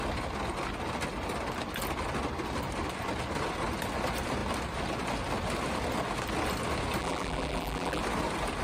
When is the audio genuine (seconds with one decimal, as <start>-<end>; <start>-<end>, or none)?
0.0-7.0; 8.0-8.6